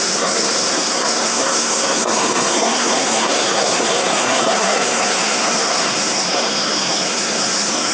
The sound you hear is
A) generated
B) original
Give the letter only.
A